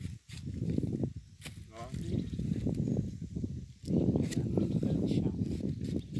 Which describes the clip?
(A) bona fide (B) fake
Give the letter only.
A